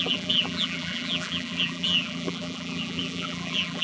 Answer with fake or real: fake